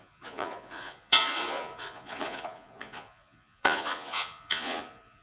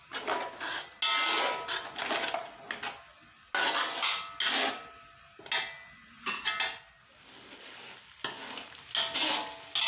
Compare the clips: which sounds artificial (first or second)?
first